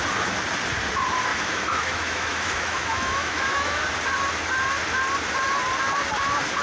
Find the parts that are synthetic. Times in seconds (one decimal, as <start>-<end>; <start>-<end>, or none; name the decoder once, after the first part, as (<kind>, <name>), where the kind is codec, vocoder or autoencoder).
1.3-3.8 (autoencoder, DAC-VAE)